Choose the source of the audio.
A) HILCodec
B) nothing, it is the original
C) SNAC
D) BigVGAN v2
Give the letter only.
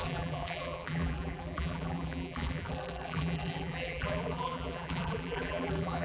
D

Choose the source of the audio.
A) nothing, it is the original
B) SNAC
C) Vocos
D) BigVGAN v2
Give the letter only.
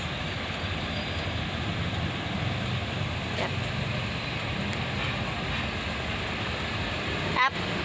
A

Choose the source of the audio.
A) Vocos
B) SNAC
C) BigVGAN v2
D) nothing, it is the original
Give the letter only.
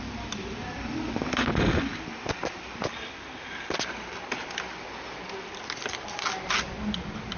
C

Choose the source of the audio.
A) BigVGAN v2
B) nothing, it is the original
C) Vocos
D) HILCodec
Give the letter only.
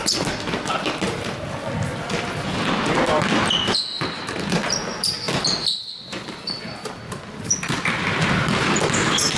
B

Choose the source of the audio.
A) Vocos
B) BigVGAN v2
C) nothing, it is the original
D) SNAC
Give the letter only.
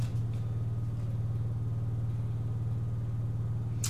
C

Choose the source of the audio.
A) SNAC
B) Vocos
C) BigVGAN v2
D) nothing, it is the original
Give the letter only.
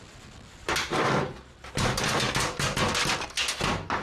D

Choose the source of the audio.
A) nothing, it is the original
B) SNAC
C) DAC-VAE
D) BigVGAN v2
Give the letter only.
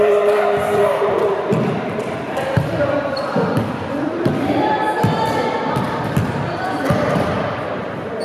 D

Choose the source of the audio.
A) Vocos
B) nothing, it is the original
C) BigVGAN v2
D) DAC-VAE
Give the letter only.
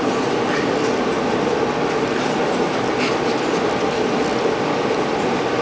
C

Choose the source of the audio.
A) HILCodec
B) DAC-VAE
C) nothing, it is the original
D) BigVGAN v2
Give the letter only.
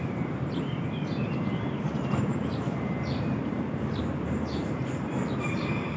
D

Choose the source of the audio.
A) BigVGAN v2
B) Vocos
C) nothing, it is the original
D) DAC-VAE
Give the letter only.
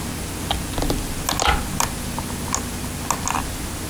C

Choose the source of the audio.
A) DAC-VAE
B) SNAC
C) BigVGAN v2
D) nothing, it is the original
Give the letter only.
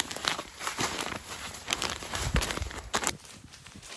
C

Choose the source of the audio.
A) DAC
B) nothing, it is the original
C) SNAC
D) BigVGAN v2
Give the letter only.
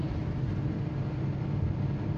D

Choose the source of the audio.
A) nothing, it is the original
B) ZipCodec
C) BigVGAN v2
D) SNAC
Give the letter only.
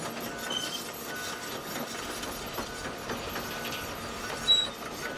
A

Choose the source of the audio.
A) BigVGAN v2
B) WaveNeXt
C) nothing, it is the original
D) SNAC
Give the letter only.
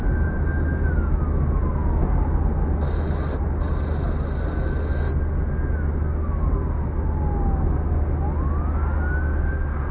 C